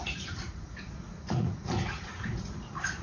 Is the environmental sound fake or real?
fake